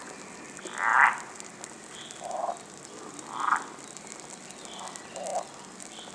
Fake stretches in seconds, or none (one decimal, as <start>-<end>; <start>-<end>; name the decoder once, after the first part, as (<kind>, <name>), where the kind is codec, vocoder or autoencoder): 0.9-4.6 (vocoder, BigVGAN v2)